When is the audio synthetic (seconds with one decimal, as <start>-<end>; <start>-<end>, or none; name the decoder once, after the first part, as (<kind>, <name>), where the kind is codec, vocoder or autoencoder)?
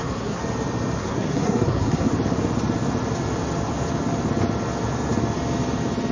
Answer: 0.0-0.4 (codec, SNAC); 1.0-2.1